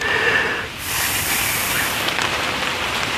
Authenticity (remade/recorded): remade